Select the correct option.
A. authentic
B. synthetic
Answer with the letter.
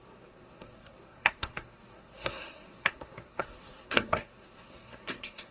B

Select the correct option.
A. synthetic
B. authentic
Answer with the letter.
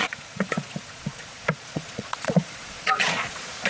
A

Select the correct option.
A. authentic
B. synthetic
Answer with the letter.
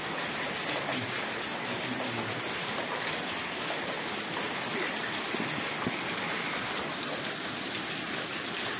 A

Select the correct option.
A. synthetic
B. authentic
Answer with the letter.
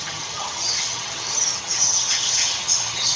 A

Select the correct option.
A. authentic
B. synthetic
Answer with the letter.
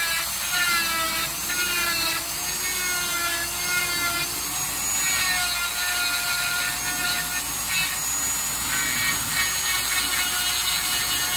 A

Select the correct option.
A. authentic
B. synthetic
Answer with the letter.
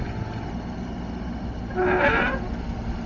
A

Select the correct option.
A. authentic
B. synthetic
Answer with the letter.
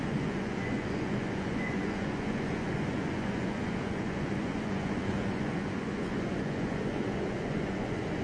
B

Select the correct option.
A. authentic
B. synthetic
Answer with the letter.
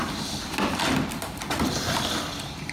A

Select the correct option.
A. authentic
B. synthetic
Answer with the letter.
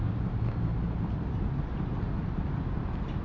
A